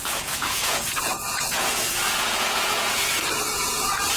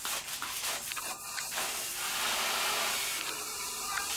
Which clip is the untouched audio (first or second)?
second